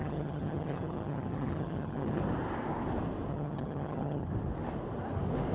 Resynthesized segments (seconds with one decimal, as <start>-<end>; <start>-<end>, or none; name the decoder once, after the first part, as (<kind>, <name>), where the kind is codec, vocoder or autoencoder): 0.0-2.2 (vocoder, HiFi-GAN); 3.3-4.3